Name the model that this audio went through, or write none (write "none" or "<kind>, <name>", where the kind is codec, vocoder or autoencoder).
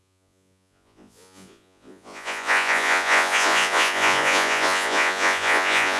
vocoder, Vocos